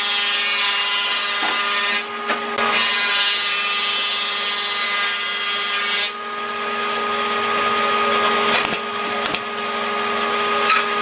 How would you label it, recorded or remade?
recorded